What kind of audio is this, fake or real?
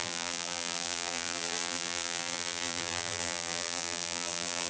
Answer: fake